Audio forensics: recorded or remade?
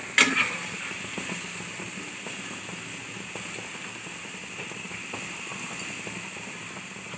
recorded